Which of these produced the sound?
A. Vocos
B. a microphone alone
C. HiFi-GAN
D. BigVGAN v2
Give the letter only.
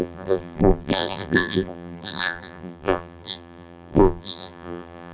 D